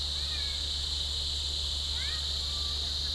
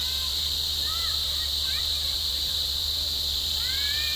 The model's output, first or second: second